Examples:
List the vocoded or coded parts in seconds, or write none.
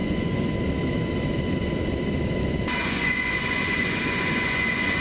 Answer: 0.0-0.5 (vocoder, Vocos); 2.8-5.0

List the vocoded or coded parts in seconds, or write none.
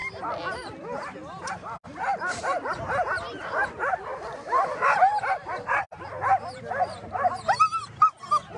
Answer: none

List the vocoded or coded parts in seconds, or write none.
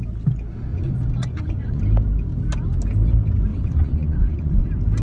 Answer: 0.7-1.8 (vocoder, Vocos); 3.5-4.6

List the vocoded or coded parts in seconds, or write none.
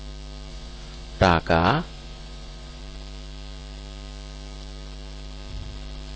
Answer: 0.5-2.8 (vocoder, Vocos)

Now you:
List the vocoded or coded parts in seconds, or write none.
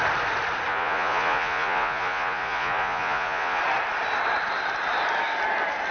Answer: 0.7-3.6 (vocoder, Vocos)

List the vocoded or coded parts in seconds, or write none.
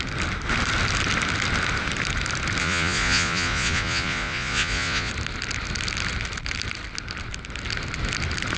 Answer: 2.6-5.1 (vocoder, Vocos)